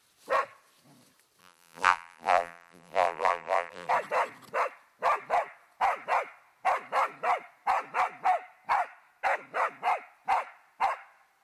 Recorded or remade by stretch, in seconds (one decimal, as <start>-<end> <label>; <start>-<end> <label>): 0.0-1.4 recorded; 1.4-3.9 remade; 3.9-11.4 recorded